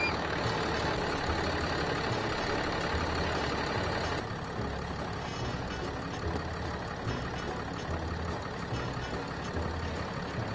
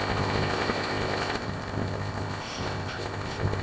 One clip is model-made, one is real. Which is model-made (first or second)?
second